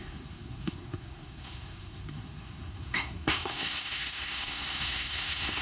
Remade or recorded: remade